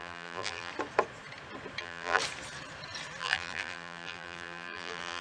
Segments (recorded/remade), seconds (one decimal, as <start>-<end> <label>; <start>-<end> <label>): 0.0-0.7 remade; 0.7-1.8 recorded; 1.8-2.2 remade; 2.2-3.2 recorded; 3.2-5.2 remade